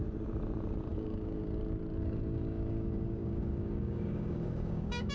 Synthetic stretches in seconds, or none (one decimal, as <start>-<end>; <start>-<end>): 0.9-1.6; 2.0-5.1